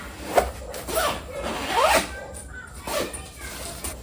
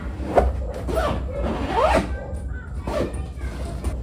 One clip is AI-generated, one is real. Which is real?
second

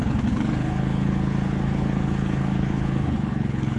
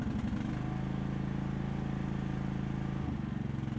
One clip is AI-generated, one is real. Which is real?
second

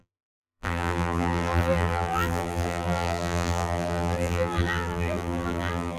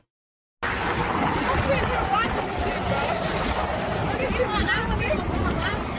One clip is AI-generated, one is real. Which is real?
second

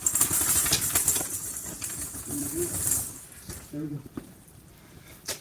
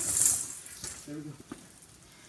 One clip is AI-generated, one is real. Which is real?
second